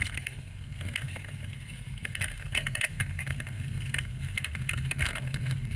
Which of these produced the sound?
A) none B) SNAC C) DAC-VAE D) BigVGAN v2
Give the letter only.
B